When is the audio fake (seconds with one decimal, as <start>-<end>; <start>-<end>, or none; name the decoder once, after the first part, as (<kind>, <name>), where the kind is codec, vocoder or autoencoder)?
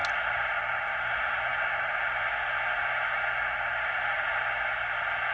none